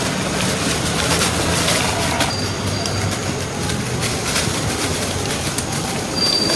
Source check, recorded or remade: recorded